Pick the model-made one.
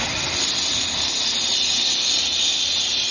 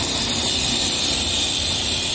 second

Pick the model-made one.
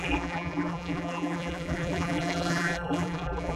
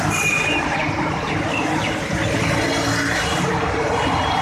first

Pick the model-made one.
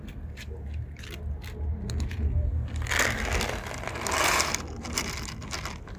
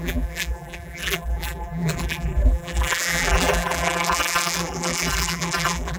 second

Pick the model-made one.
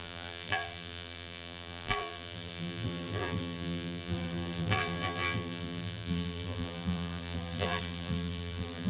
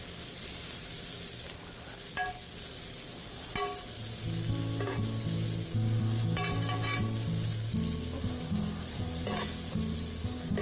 first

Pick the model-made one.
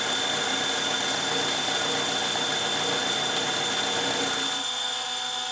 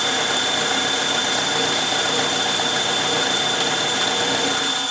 second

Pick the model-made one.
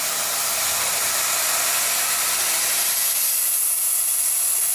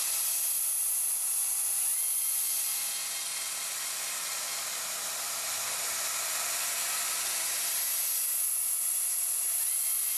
first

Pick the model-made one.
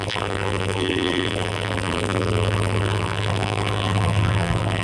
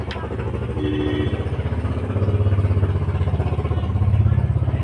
first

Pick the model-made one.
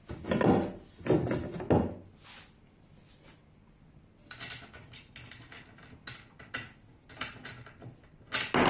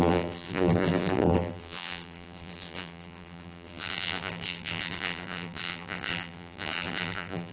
second